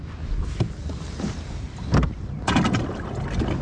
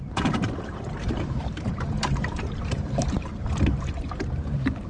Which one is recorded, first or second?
first